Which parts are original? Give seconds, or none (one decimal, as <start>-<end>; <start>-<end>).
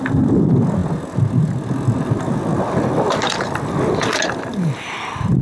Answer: 0.0-5.4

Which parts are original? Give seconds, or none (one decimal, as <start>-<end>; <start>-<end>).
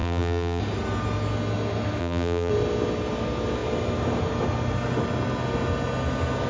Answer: 0.6-2.0; 2.5-6.5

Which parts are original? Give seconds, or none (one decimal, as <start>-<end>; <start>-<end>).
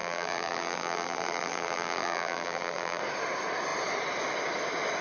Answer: 3.0-5.0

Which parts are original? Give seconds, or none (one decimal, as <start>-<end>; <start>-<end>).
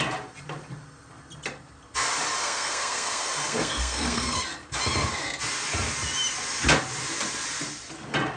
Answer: 0.0-2.4; 4.4-8.4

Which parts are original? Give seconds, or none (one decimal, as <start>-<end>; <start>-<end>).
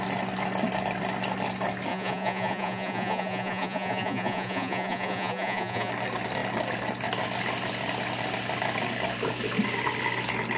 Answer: 0.0-1.9; 5.9-10.6